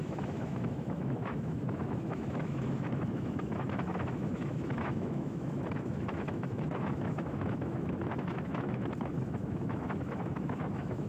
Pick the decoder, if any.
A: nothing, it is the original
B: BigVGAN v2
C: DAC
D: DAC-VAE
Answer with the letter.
D